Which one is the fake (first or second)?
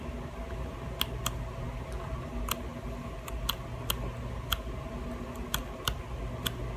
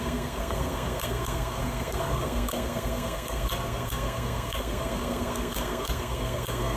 second